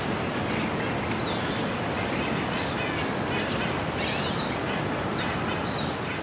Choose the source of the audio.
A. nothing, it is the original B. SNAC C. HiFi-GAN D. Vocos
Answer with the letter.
A